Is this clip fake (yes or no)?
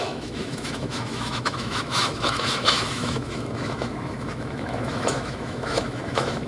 yes